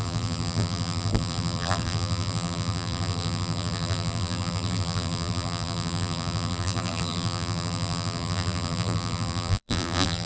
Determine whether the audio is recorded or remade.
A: remade